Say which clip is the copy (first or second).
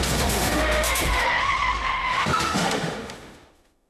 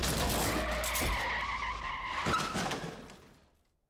first